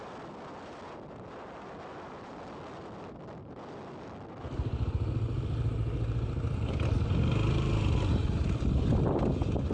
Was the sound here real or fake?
real